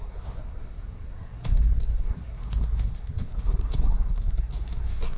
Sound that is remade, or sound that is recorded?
remade